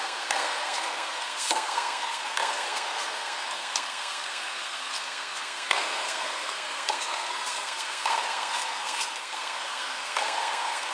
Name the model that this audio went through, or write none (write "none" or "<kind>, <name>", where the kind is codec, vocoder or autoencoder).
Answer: codec, SNAC